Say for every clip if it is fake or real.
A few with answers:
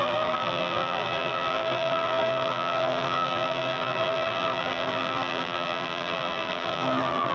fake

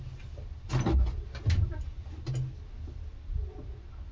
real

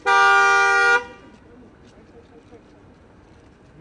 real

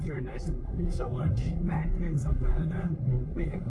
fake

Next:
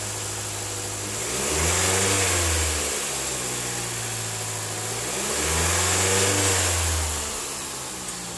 real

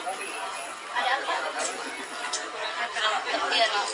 real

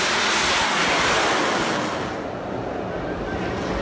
real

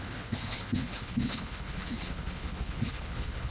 fake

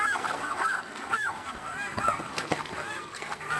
fake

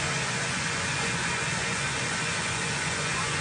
fake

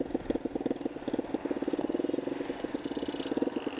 real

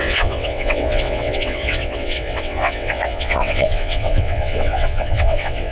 fake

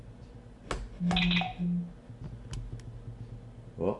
real